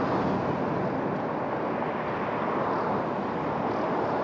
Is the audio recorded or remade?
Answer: recorded